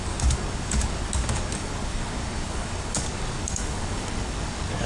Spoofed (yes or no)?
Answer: yes